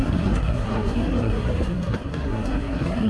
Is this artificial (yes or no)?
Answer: yes